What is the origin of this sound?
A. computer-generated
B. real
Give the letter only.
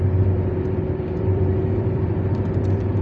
A